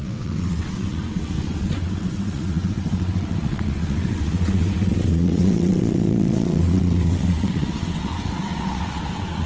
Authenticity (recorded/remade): remade